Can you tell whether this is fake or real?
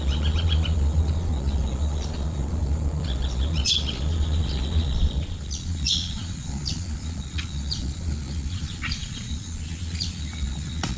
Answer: fake